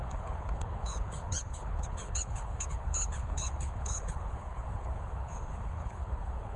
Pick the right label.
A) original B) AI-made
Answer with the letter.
B